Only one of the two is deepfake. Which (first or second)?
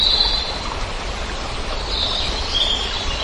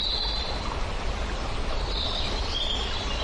first